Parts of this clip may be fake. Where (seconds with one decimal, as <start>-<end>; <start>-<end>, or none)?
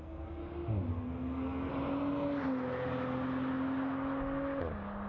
0.0-0.4; 0.9-1.7